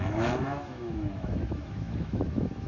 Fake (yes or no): yes